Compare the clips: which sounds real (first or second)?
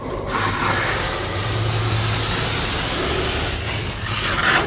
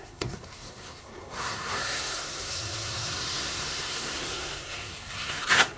first